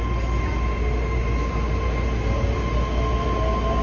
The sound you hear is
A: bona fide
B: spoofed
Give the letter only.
A